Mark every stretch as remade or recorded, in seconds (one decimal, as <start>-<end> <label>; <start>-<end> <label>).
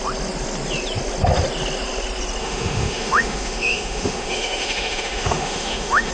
0.0-2.4 recorded; 2.4-6.1 remade